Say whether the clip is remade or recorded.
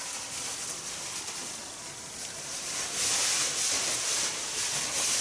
recorded